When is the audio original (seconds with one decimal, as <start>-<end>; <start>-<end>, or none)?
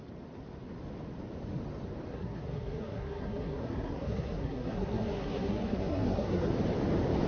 0.0-2.1; 6.5-7.3